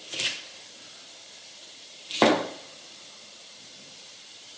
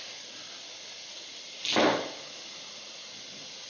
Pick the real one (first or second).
second